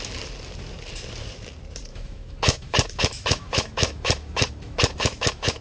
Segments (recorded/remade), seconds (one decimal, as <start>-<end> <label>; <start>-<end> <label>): 0.0-1.9 recorded; 1.9-5.6 remade